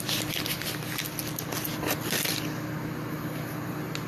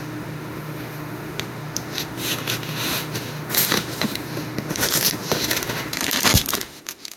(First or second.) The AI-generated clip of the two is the second